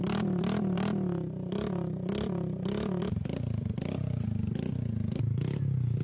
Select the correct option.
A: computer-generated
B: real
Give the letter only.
B